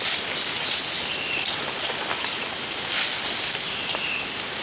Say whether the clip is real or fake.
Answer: real